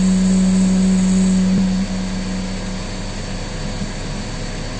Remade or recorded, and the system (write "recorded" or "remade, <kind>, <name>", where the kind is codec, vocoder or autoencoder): recorded